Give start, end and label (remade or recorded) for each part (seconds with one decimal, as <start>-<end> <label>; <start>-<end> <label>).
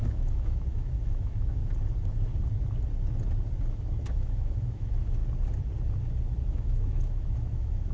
0.0-1.6 remade; 1.6-4.0 recorded; 4.0-5.2 remade; 5.2-6.5 recorded; 6.5-7.9 remade